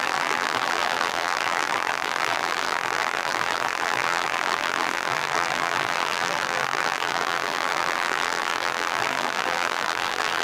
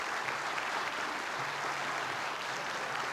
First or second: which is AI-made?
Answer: first